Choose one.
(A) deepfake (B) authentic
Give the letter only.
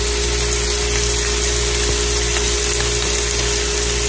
B